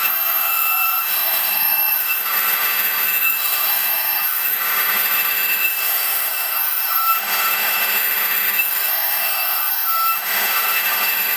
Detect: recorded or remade remade